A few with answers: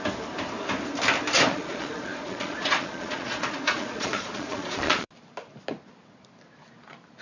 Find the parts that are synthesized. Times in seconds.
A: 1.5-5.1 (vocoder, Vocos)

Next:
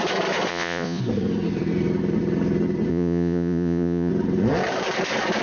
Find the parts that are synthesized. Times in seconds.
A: 0.5-1.0 (vocoder, Vocos); 2.9-4.1